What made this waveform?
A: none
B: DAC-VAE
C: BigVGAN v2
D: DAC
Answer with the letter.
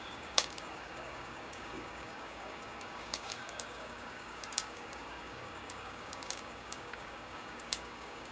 D